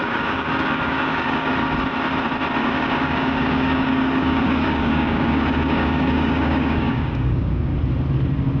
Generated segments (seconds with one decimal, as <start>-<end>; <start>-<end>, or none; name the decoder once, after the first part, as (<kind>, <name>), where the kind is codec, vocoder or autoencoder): 0.0-1.5 (codec, DAC); 2.6-7.7